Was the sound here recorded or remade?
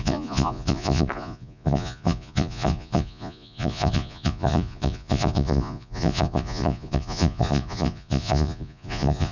remade